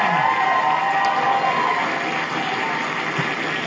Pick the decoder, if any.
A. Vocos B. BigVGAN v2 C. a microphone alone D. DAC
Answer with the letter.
C